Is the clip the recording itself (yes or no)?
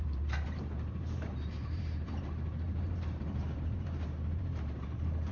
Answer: no